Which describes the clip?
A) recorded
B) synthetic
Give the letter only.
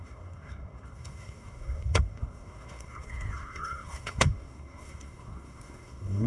B